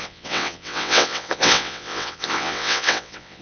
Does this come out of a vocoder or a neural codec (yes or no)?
yes